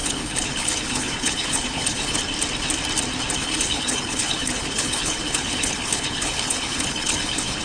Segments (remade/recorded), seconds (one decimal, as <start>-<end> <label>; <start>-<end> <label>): 0.0-2.2 remade; 2.2-3.4 recorded; 3.4-7.6 remade